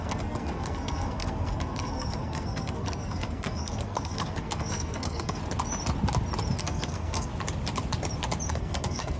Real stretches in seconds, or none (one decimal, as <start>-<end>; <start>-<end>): 5.4-6.6; 7.3-8.5